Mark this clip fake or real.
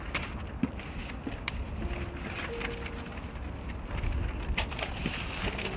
real